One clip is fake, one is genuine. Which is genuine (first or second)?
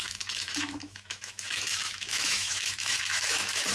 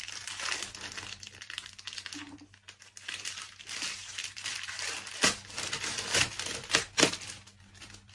second